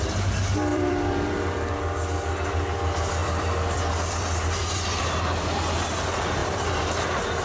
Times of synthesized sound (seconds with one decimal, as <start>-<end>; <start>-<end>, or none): 0.7-1.7; 3.2-5.0; 6.4-7.0